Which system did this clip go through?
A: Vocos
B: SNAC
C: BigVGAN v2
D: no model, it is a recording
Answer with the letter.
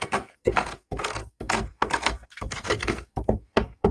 B